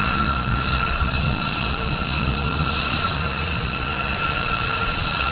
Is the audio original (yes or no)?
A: no